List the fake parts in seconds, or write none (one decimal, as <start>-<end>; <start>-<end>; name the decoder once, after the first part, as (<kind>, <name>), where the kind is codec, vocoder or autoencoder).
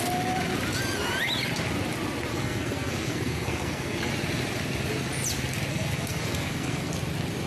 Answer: 2.3-4.1 (codec, SNAC); 5.7-6.9